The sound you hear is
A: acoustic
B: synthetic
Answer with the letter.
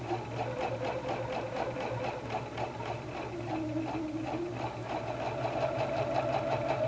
A